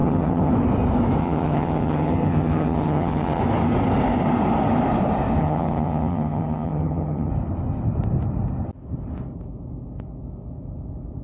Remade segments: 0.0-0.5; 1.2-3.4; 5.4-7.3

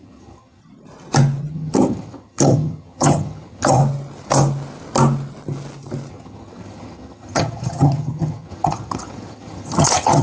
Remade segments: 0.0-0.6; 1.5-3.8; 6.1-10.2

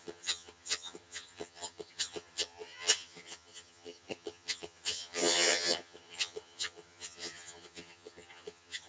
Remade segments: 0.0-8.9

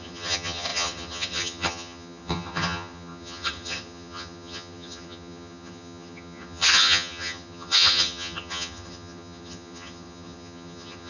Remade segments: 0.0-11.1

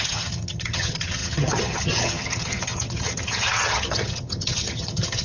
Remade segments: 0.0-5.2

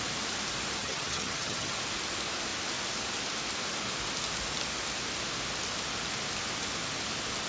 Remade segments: 0.8-1.7

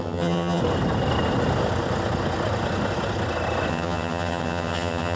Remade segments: 0.0-0.6; 3.7-5.2

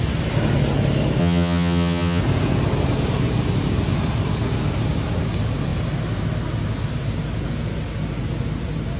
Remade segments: 1.2-2.2